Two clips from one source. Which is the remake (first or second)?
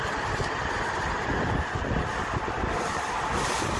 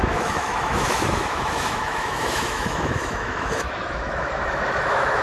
second